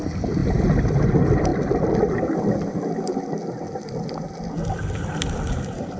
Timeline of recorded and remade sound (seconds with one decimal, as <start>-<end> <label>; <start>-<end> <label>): 0.0-6.0 recorded